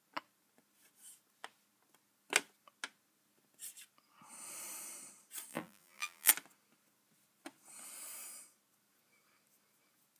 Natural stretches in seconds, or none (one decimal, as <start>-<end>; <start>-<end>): 0.0-5.5; 6.3-10.2

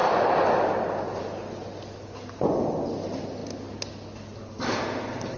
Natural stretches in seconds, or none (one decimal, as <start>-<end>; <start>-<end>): 0.0-5.4

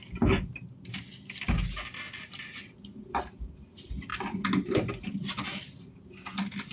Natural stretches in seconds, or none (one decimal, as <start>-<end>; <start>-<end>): 0.0-6.7

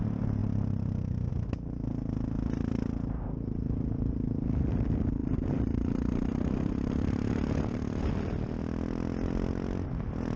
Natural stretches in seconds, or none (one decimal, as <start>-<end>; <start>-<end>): 0.0-5.2; 8.1-10.4

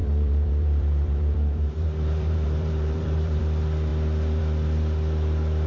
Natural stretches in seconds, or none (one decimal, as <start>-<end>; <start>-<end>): 3.4-5.7